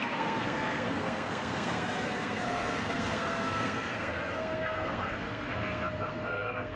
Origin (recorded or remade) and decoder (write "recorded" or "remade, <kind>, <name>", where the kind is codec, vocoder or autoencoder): remade, codec, SNAC